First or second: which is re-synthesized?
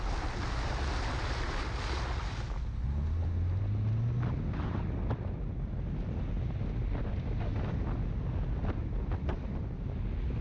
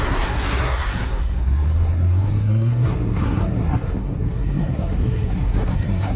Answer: second